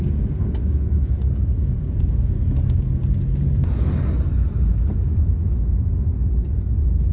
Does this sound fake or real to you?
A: real